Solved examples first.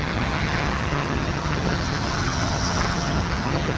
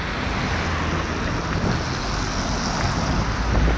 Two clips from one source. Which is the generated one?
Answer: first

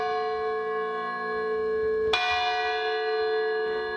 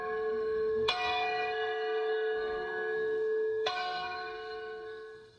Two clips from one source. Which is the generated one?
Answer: second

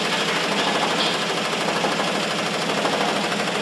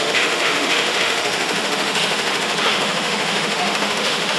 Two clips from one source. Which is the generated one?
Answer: second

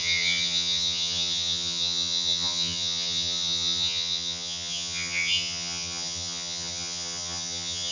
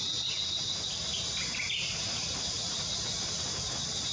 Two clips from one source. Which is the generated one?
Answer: first